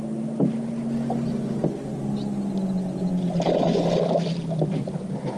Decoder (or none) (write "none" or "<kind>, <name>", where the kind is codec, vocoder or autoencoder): none